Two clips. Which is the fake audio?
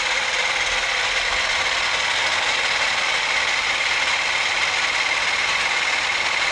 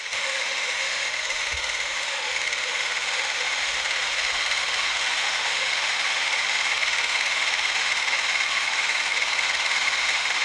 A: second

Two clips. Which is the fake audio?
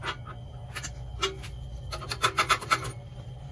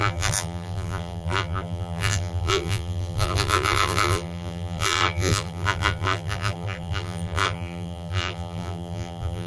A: second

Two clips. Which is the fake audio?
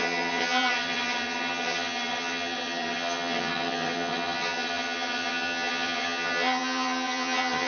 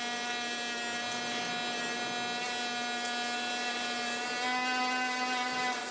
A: first